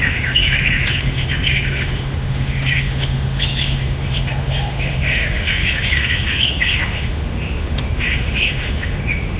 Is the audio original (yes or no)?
no